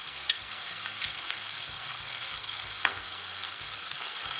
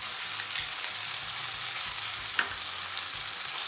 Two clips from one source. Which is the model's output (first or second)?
first